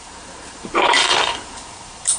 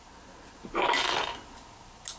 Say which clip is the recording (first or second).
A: second